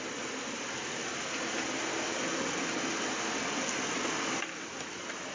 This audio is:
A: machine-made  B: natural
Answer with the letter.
B